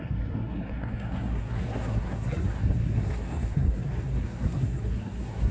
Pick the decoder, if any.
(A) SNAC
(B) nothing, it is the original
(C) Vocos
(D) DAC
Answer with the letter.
A